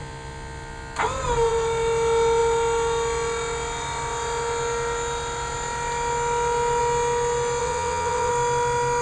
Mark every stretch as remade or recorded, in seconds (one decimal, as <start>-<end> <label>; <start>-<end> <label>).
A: 0.0-7.6 recorded; 7.6-8.3 remade; 8.3-9.0 recorded